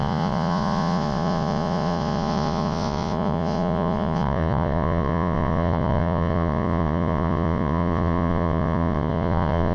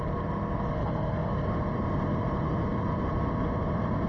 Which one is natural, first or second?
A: second